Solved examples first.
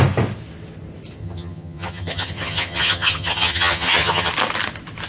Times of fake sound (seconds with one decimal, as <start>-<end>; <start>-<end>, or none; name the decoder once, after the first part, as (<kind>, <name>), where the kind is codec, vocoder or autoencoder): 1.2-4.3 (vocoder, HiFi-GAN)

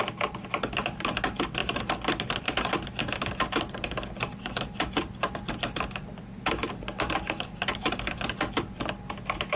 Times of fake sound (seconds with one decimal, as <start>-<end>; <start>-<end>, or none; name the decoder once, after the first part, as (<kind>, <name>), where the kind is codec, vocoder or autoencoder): none

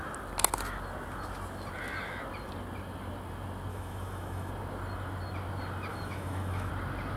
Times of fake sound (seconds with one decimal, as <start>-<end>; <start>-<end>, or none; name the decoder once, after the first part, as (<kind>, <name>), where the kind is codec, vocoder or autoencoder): 3.7-4.5 (autoencoder, DAC-VAE); 5.9-6.7

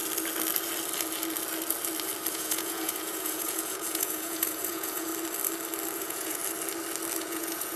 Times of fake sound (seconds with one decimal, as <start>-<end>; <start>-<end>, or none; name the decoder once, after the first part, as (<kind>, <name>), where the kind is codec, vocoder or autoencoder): 2.3-5.1 (vocoder, Vocos); 6.0-6.4; 7.2-7.8